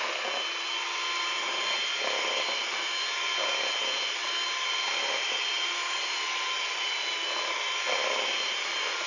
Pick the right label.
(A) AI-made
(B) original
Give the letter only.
B